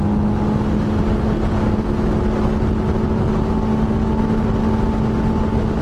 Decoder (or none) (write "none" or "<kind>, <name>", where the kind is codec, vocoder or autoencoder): none